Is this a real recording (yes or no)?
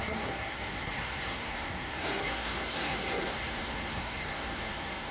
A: no